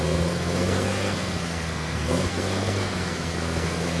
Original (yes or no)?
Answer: no